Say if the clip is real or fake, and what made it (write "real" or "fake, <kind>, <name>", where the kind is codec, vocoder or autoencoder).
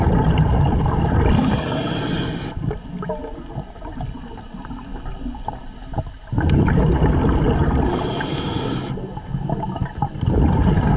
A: real